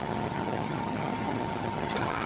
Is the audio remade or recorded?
remade